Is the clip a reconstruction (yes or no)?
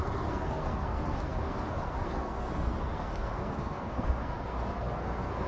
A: yes